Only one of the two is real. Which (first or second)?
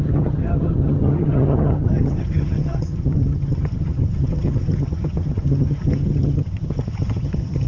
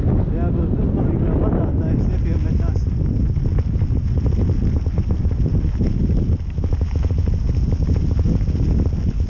second